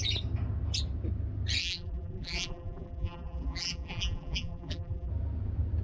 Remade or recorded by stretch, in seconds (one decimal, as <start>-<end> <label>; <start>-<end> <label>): 0.0-1.6 recorded; 1.6-5.1 remade; 5.1-5.8 recorded

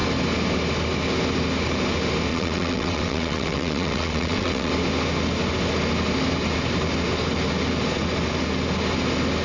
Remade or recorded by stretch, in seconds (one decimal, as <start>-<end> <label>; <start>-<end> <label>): 0.0-2.3 recorded; 2.3-4.7 remade; 4.7-9.4 recorded

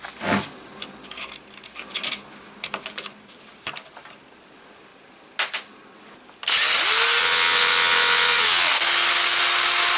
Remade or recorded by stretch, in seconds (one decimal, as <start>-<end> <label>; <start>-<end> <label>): 0.0-7.2 recorded; 7.2-8.7 remade; 8.7-10.0 recorded

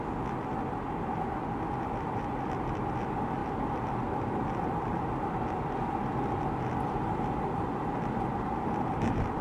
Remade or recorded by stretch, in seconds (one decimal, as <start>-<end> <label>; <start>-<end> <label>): 0.0-9.4 recorded

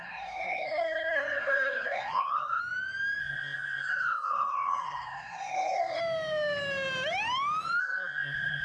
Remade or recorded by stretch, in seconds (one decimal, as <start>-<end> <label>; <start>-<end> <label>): 0.0-2.6 remade; 2.6-3.2 recorded; 3.2-6.0 remade; 6.0-7.8 recorded; 7.8-8.6 remade